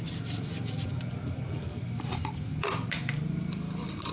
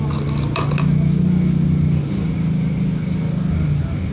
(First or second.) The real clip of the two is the second